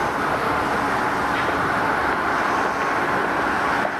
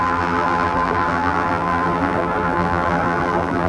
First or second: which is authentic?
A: first